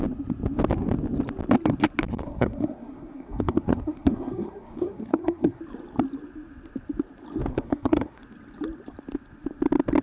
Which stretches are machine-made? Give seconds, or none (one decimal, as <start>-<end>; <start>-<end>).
2.1-5.6; 7.5-8.2